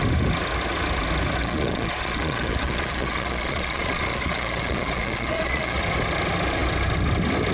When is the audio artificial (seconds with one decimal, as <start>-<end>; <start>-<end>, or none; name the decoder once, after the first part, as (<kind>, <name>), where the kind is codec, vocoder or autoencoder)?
1.4-5.8 (vocoder, Vocos)